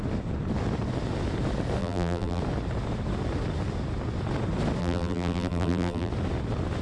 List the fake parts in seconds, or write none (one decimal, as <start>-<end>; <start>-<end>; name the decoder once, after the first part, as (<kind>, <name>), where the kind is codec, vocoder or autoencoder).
1.8-2.4 (vocoder, BigVGAN v2); 4.8-6.1